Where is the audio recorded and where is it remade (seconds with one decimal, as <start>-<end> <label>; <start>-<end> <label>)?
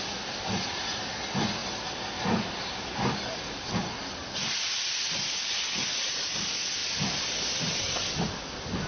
0.0-8.9 recorded